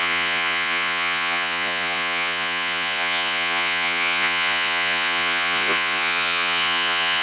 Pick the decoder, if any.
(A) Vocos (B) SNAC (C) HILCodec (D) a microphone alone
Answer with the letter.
A